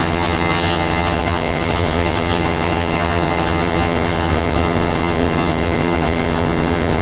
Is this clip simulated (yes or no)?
yes